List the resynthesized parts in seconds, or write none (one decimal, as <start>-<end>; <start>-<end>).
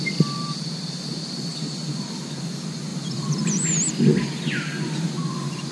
1.5-2.3; 2.9-3.9